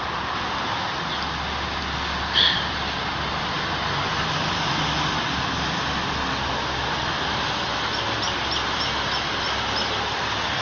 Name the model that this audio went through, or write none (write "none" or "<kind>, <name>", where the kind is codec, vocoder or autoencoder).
none